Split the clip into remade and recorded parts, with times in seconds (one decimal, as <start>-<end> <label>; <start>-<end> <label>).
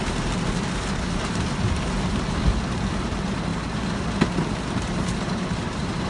0.0-3.5 remade; 3.5-5.6 recorded; 5.6-6.1 remade